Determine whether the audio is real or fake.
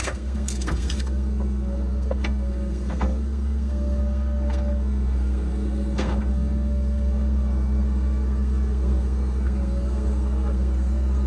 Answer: fake